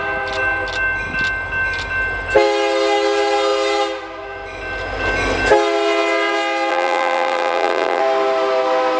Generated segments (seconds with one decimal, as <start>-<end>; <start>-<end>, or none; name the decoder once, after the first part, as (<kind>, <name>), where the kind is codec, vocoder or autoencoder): 6.7-8.0 (vocoder, BigVGAN v2)